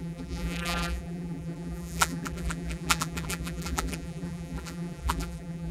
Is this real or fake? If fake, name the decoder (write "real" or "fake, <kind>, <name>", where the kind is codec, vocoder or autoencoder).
fake, vocoder, BigVGAN v2